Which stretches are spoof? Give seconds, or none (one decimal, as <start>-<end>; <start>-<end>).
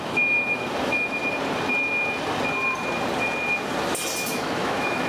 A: 0.0-1.2; 4.3-5.1